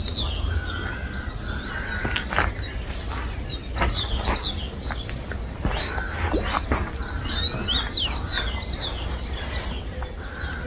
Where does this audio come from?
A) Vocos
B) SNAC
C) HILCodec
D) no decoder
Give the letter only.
D